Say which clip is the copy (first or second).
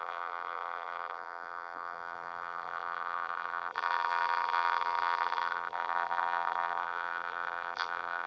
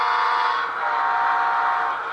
first